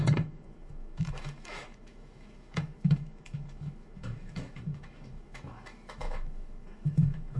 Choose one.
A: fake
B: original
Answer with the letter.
A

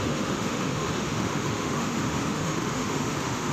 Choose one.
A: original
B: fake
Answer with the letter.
B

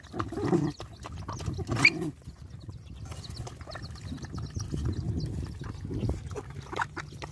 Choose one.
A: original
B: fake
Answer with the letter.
A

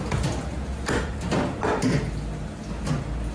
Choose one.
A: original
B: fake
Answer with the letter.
A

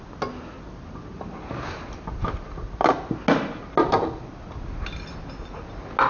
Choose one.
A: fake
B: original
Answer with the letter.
B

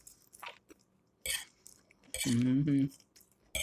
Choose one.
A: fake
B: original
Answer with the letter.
B